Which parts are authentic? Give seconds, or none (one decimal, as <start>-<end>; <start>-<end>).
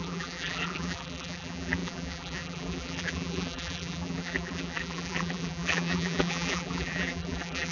none